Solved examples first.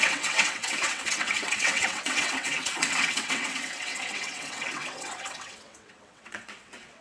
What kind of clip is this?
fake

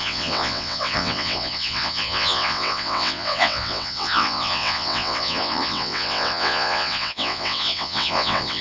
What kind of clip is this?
fake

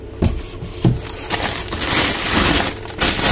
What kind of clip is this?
real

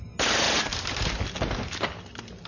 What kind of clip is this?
real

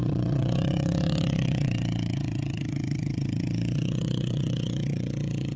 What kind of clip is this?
fake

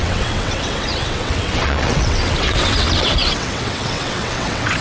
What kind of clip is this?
fake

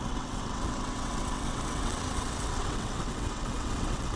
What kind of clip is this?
fake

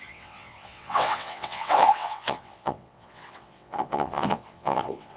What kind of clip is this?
fake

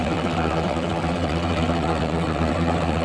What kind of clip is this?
fake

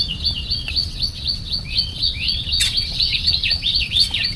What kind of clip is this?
fake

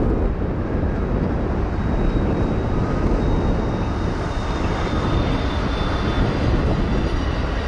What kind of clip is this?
real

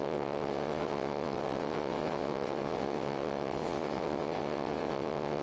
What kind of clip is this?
fake